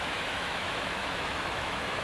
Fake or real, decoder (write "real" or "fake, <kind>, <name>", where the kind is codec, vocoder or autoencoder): fake, autoencoder, DAC-VAE